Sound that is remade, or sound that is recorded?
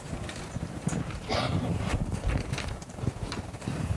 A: remade